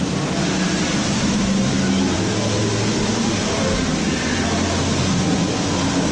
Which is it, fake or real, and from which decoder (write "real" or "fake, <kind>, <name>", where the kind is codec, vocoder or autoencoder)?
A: real